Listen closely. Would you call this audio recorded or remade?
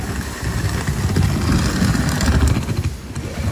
recorded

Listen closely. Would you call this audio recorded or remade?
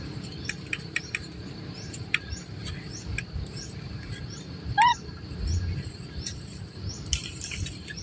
remade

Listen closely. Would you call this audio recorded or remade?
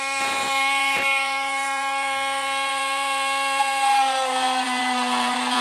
remade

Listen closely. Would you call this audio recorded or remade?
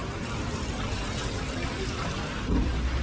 recorded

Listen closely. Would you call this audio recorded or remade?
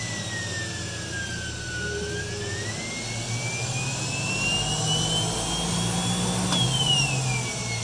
recorded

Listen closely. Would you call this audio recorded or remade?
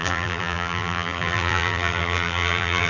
remade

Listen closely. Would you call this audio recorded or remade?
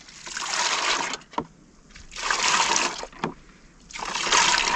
recorded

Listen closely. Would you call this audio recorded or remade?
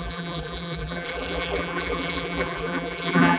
remade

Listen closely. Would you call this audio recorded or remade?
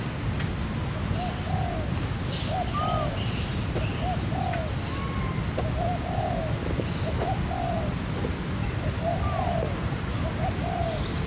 recorded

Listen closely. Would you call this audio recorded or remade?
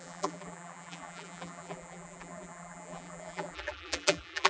remade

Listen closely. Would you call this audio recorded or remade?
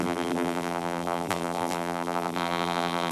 remade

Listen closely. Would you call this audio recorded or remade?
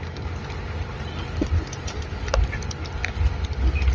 recorded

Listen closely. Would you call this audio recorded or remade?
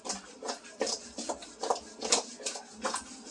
recorded